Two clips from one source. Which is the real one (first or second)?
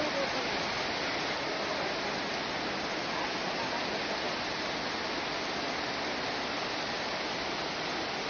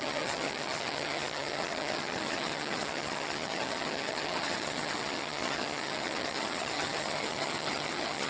first